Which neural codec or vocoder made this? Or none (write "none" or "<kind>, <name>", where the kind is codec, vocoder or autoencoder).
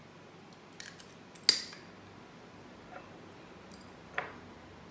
none